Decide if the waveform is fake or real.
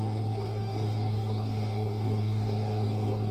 fake